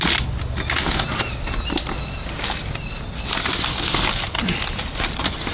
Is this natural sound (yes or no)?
yes